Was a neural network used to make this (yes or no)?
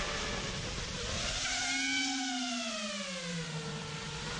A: no